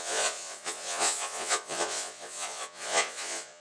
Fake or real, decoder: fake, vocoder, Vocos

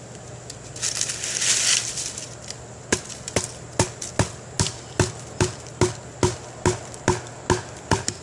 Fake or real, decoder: real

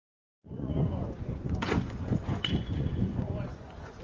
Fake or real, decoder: fake, vocoder, Vocos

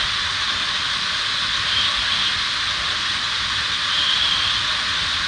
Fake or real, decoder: real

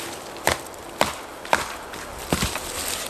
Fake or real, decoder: real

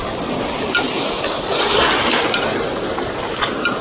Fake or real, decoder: real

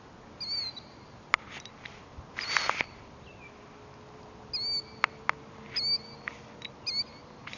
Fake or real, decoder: real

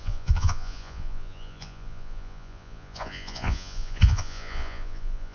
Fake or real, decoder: fake, vocoder, Vocos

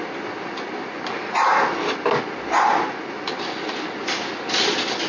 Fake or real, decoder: real